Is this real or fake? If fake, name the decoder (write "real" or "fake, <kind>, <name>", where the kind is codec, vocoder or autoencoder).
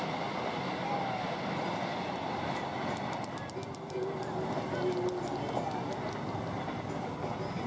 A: real